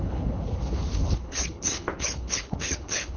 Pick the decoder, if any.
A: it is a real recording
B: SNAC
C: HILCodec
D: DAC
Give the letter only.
C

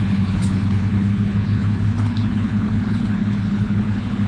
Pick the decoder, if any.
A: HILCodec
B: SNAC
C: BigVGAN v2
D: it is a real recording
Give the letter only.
A